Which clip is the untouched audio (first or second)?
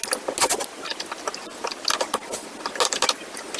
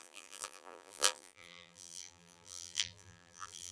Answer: first